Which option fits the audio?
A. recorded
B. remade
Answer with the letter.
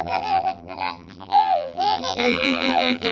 B